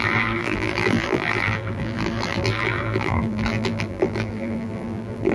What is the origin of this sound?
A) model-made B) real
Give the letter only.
A